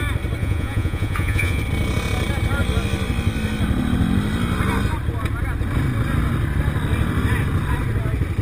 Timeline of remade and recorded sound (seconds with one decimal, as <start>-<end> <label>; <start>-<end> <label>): 0.0-0.4 recorded; 0.4-1.6 remade; 1.6-8.4 recorded